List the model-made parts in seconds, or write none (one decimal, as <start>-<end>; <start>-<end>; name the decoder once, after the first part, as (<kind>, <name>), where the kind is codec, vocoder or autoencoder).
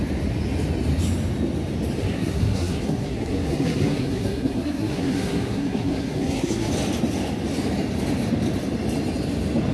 2.0-6.7 (codec, SNAC)